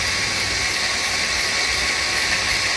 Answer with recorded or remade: recorded